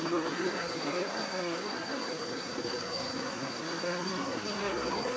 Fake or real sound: fake